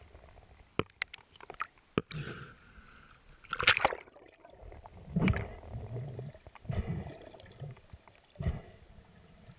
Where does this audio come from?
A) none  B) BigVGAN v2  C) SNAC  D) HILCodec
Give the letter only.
A